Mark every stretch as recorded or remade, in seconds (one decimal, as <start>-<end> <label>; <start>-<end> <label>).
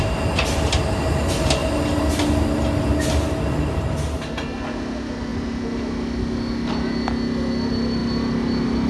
0.0-8.9 recorded